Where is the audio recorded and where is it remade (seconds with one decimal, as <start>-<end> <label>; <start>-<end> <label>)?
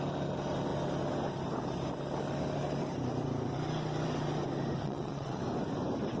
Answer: 0.0-4.8 recorded; 4.8-5.4 remade; 5.4-6.2 recorded